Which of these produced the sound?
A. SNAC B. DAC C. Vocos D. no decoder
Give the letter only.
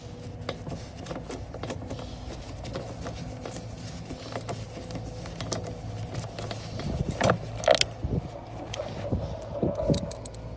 D